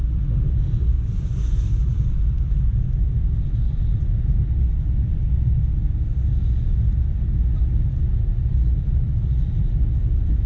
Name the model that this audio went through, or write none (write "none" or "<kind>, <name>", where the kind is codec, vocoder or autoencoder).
none